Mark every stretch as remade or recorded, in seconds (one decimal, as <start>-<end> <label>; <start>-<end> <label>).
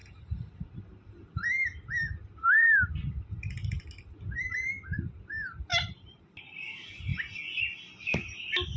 0.0-3.9 remade; 3.9-5.7 recorded; 5.7-6.4 remade; 6.4-8.8 recorded